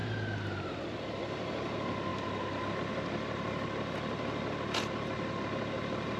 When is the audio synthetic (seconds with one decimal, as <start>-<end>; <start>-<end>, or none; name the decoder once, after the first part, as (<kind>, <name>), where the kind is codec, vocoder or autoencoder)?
none